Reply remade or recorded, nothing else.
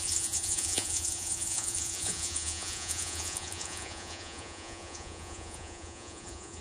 remade